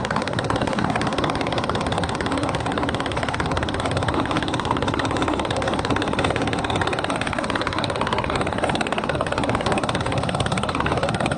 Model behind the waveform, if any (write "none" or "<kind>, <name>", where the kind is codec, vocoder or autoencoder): codec, SNAC